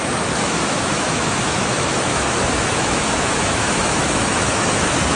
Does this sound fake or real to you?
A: fake